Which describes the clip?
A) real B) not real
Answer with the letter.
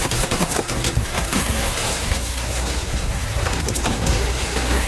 B